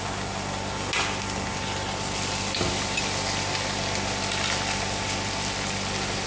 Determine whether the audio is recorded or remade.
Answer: recorded